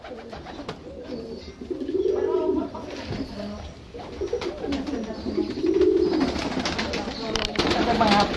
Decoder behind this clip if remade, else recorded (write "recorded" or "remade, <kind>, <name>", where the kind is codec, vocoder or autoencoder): recorded